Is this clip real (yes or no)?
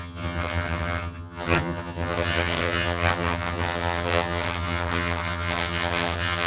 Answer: no